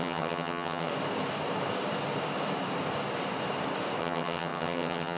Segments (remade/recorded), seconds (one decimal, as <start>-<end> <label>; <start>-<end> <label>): 0.0-0.9 remade; 0.9-4.0 recorded; 4.0-5.2 remade